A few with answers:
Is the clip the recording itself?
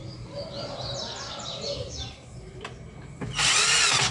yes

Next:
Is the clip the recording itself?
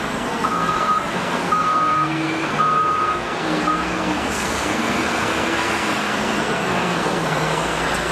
no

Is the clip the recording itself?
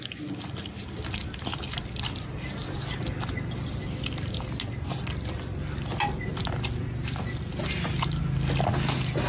yes